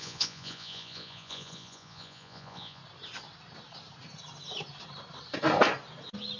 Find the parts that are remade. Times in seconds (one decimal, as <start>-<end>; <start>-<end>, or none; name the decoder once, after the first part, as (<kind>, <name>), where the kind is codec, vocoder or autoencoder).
0.0-2.8 (vocoder, Vocos)